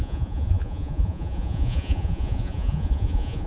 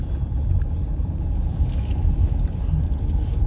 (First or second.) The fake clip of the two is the first